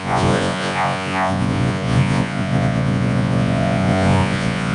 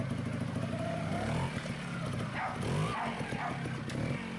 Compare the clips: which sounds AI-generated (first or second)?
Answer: first